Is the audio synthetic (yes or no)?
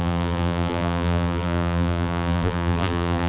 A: yes